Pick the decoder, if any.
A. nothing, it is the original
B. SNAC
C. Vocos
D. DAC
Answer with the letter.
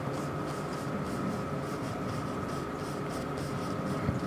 A